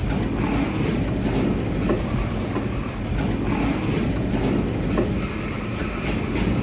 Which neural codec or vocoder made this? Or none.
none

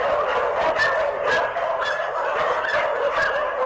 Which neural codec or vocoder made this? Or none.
none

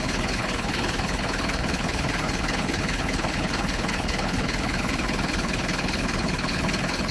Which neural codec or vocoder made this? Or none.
codec, HILCodec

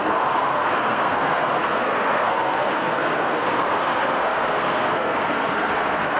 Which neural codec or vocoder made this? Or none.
codec, SNAC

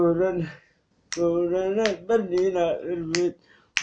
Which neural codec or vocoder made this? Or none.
none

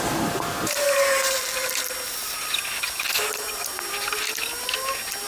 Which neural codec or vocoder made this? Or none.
none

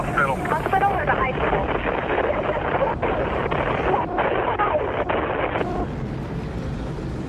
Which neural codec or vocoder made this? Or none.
none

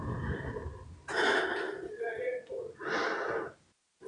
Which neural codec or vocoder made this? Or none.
none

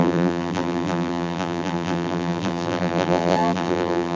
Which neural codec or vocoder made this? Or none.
vocoder, BigVGAN v2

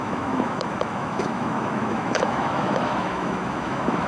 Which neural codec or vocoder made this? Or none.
autoencoder, DAC-VAE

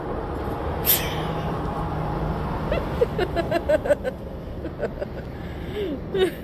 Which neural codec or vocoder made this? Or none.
none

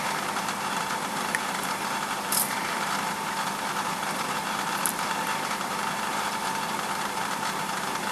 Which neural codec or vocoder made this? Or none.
vocoder, BigVGAN v2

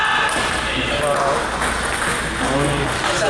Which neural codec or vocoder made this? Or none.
none